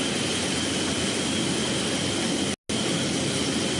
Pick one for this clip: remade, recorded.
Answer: recorded